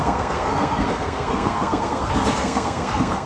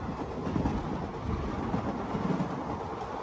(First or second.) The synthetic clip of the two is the first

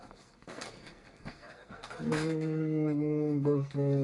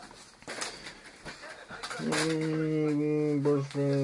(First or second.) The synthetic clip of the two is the first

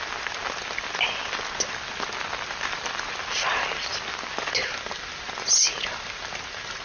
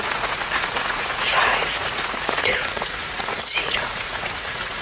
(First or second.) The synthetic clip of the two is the second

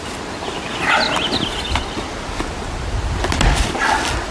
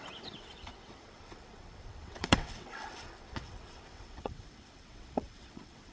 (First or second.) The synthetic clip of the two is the second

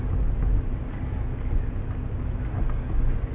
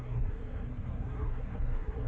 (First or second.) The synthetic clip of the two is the second